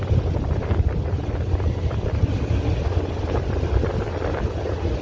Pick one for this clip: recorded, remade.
recorded